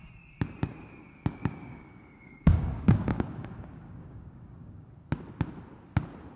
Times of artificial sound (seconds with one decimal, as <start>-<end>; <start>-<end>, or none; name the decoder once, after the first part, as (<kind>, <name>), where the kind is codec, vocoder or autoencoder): 1.4-4.9 (codec, DAC)